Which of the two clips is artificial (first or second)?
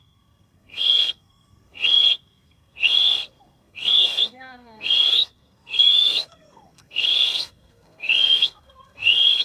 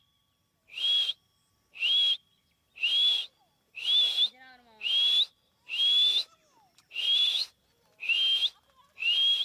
first